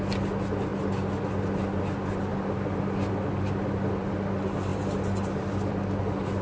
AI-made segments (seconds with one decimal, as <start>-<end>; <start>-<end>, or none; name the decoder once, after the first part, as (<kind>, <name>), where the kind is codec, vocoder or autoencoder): none